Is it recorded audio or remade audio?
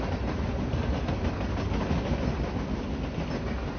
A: recorded